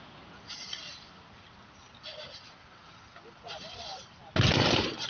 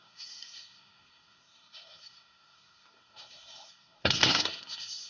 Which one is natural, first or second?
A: first